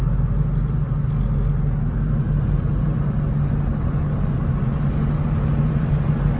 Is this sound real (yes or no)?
yes